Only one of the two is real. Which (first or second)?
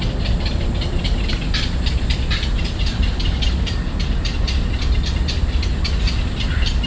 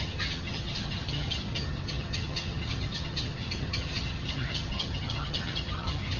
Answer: first